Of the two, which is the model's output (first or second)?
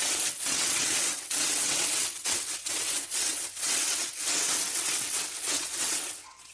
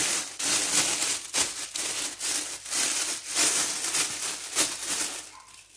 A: first